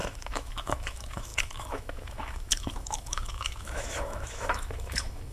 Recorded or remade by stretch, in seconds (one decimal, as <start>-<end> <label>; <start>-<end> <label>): 0.0-5.3 remade